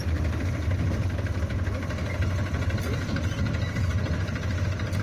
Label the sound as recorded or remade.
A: recorded